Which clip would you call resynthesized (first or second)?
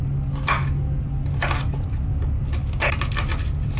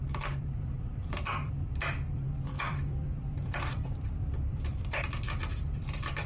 second